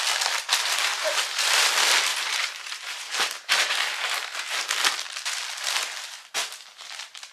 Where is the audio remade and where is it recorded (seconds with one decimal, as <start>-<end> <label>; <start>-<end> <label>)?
0.0-0.9 recorded; 0.9-1.6 remade; 1.6-2.1 recorded; 2.1-4.6 remade; 4.6-7.3 recorded